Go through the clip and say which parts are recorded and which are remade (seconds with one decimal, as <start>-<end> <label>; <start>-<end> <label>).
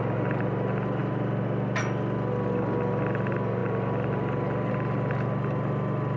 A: 0.0-6.2 recorded